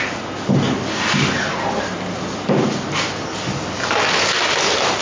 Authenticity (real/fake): real